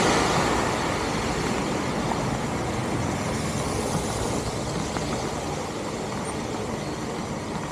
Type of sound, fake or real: real